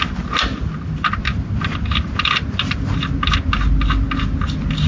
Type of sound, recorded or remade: recorded